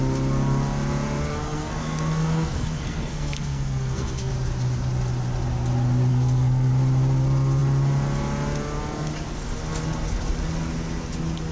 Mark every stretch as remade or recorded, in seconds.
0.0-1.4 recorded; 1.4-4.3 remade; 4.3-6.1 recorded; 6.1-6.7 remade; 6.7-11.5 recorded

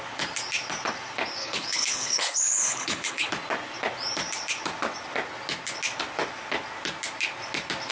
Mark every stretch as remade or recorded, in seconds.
0.0-1.4 recorded; 1.4-3.3 remade; 3.3-7.9 recorded

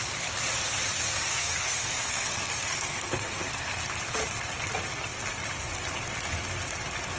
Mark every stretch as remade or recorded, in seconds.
0.0-1.3 recorded; 1.3-3.8 remade; 3.8-7.2 recorded

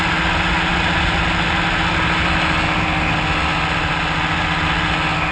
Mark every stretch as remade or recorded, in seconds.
0.0-5.3 recorded

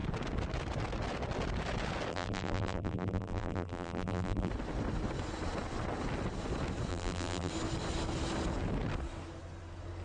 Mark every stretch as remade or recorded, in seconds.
0.0-2.1 recorded; 2.1-4.5 remade; 4.5-6.9 recorded; 6.9-7.5 remade; 7.5-10.0 recorded

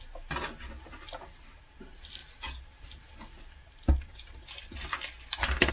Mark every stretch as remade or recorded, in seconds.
0.0-5.7 recorded

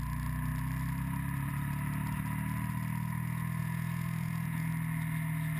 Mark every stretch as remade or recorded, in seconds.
0.0-3.6 recorded; 3.6-4.7 remade; 4.7-5.6 recorded

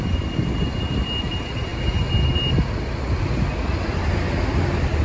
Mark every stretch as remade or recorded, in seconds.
0.0-5.0 recorded